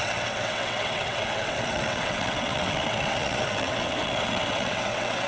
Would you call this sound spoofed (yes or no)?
yes